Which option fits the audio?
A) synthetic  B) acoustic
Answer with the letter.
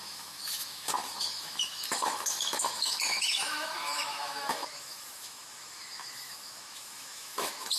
A